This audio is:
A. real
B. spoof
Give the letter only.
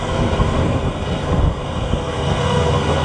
B